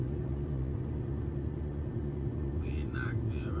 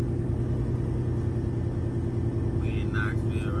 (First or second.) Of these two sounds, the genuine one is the second